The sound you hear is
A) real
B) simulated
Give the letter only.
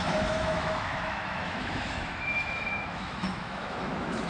B